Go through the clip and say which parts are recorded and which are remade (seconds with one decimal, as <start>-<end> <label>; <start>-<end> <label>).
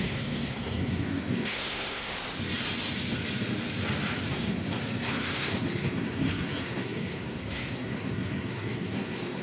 0.0-2.1 remade; 2.1-4.3 recorded; 4.3-9.4 remade